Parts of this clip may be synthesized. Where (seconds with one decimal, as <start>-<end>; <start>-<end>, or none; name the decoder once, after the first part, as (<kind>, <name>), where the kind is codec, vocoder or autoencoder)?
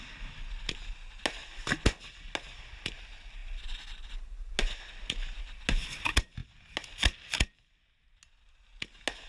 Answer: none